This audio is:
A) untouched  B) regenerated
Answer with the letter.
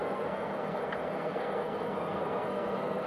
B